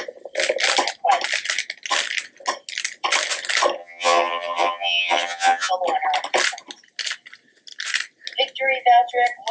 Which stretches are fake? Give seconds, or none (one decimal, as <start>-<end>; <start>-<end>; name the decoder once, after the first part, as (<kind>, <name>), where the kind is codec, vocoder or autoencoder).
3.8-5.7 (vocoder, HiFi-GAN)